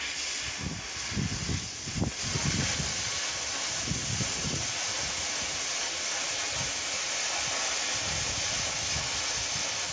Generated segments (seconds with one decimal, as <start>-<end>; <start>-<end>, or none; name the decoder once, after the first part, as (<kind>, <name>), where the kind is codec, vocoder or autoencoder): 4.0-6.5 (vocoder, Vocos)